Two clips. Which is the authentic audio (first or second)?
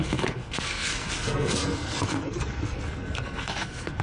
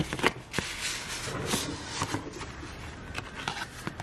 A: second